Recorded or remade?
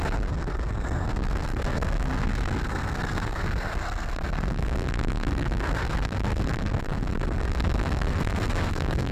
remade